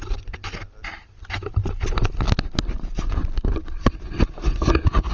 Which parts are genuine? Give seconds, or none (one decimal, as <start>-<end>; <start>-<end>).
0.0-5.1